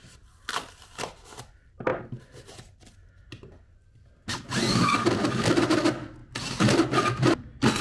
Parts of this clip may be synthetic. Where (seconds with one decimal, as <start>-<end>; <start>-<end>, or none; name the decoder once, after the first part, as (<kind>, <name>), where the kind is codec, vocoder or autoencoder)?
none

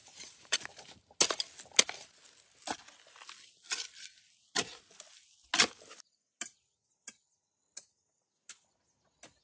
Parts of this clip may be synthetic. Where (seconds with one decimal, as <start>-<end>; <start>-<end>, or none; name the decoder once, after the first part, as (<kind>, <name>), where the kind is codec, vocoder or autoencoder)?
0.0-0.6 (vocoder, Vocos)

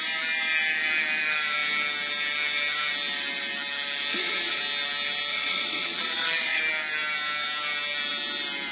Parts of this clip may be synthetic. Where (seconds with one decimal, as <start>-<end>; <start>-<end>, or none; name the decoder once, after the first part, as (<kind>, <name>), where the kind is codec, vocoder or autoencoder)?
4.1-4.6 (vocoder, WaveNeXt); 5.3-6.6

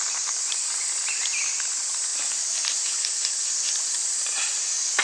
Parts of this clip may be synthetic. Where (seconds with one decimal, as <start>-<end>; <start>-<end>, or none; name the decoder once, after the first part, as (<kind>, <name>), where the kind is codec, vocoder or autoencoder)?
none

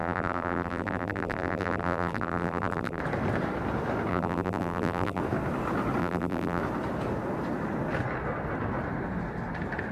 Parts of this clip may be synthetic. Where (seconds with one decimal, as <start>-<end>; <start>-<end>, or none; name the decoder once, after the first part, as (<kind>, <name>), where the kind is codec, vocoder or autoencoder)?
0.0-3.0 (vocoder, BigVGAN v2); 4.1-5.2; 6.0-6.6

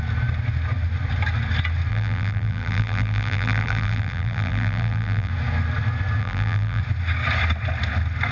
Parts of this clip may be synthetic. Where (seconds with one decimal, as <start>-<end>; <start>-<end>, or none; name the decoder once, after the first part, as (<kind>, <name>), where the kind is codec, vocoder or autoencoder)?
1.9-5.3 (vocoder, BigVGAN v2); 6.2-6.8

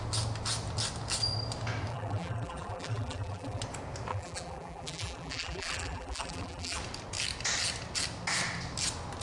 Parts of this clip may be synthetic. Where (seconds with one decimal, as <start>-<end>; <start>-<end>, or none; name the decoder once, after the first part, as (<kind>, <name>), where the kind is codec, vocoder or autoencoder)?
1.9-3.6 (vocoder, BigVGAN v2); 4.1-6.8

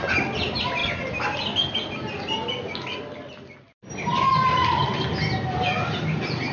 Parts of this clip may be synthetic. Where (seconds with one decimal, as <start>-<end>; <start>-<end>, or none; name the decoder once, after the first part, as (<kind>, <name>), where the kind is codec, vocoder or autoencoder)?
none